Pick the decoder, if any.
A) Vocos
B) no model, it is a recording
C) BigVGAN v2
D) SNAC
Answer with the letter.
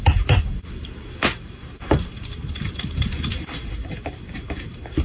C